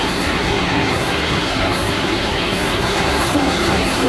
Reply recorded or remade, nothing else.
remade